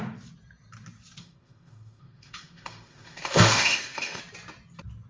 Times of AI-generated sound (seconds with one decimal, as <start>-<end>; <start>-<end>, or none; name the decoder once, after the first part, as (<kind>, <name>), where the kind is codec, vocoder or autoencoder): 1.2-4.2 (autoencoder, DAC-VAE)